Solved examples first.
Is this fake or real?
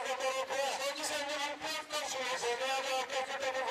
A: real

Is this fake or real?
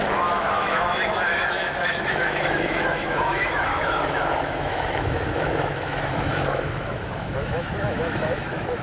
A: fake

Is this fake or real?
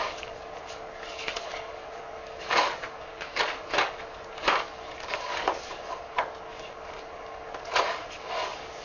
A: fake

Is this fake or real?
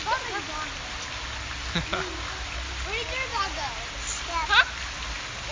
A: real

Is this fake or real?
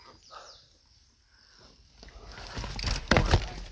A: real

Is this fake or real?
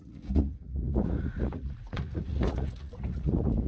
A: fake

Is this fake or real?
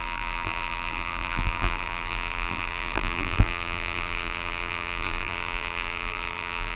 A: fake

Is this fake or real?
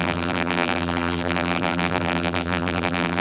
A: fake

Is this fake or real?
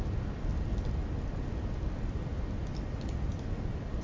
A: real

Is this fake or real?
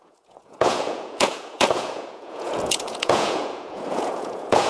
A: fake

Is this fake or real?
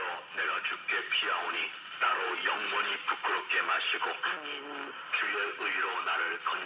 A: real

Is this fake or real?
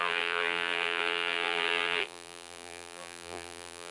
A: fake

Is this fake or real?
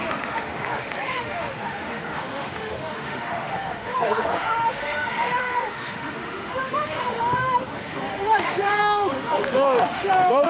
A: fake